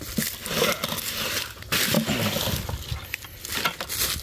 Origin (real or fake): real